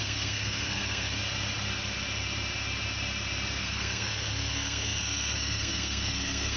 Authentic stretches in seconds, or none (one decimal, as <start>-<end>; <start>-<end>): 1.2-3.6